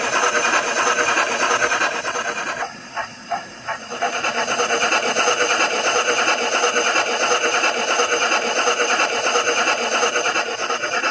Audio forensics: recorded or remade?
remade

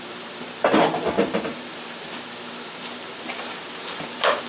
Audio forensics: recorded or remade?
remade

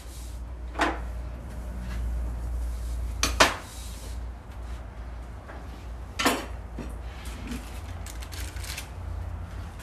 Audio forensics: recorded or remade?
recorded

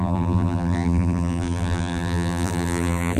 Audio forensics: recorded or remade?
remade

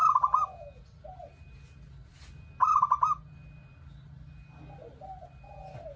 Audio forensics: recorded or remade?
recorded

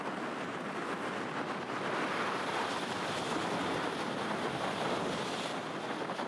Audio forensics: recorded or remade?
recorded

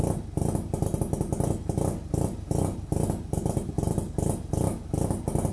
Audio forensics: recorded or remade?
recorded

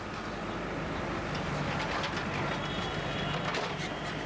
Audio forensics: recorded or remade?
recorded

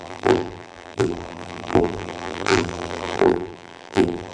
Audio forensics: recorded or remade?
remade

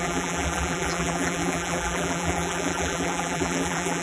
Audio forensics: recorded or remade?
remade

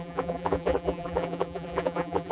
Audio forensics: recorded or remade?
remade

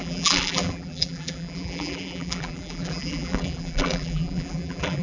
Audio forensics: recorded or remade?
remade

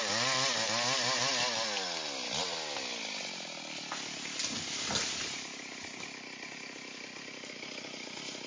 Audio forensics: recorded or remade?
recorded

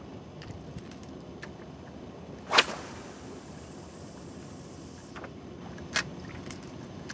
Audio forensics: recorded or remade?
recorded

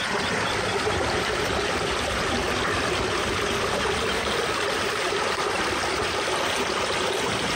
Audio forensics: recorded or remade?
remade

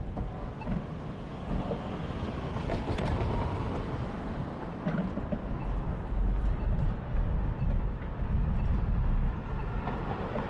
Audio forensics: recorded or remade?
recorded